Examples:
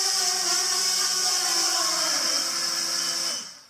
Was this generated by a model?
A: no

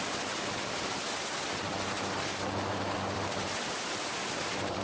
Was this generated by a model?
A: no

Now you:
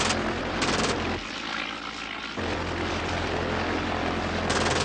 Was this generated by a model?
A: no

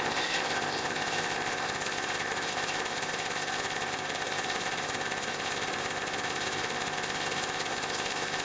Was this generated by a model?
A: yes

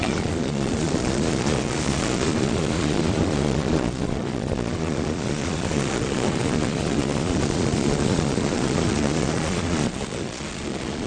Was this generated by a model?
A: yes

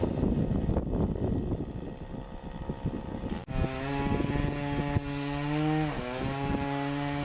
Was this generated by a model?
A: no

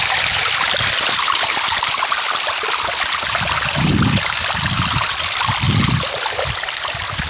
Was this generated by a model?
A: no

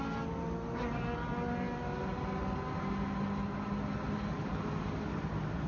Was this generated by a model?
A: no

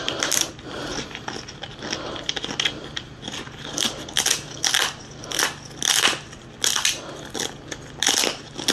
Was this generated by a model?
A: no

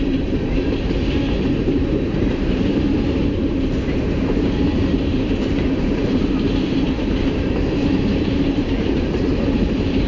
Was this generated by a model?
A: yes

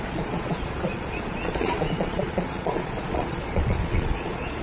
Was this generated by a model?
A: yes